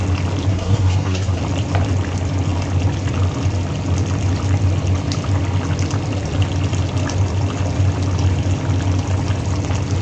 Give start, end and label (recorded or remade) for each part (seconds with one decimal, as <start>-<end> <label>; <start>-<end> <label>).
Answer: 0.0-0.5 recorded; 0.5-1.4 remade; 1.4-10.0 recorded